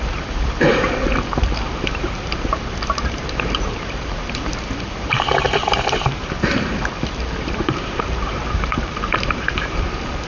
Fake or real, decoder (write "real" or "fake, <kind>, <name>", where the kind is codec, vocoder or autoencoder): fake, vocoder, BigVGAN v2